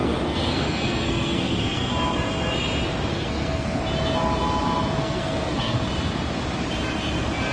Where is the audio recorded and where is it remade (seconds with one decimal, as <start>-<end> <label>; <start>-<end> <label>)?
0.0-1.9 remade; 1.9-3.1 recorded; 3.1-3.8 remade; 3.8-5.0 recorded; 5.0-5.8 remade; 5.8-7.5 recorded